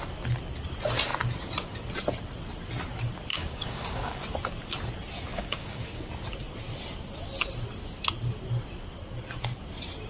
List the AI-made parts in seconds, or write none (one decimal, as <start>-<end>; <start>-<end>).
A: 3.3-4.2; 5.3-6.1